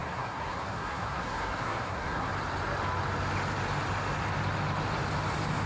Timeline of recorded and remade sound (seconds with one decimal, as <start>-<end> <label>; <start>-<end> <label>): 0.0-2.3 remade; 2.3-5.7 recorded